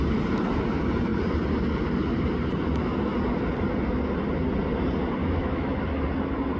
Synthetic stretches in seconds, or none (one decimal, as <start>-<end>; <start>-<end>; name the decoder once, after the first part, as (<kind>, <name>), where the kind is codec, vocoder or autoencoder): 5.2-5.8 (autoencoder, DAC-VAE)